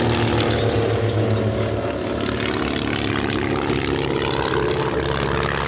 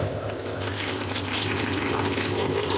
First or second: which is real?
first